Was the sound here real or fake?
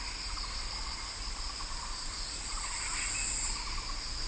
real